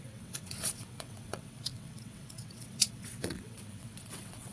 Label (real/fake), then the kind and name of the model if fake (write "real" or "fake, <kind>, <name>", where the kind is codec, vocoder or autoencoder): fake, vocoder, WaveNeXt